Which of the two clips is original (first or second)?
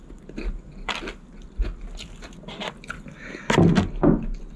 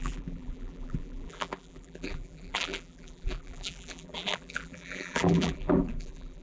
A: first